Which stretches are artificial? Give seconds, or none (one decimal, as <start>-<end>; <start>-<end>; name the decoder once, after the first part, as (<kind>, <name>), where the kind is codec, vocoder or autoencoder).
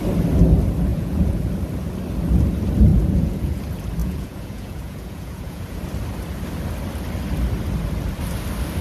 0.9-1.5 (vocoder, Vocos); 2.9-3.6; 4.0-5.8